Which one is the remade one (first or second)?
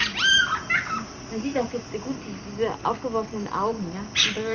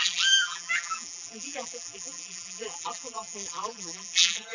second